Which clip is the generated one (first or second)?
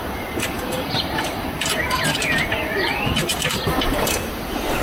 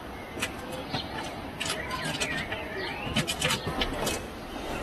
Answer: first